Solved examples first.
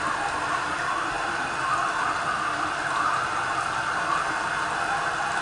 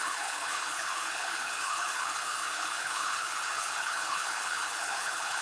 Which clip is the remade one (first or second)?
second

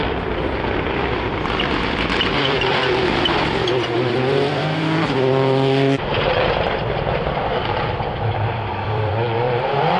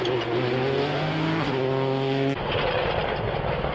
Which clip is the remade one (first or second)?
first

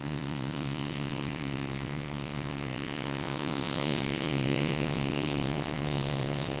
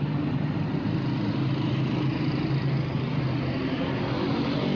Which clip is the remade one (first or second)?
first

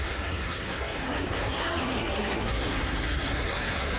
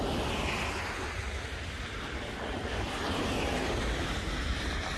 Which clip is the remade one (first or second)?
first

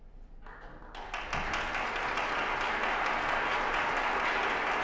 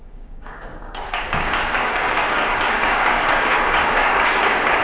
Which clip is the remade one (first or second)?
second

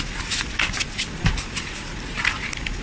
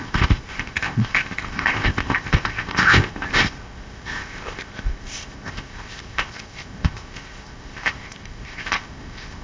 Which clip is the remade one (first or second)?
second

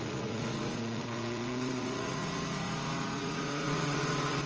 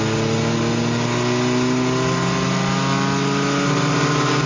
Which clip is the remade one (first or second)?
first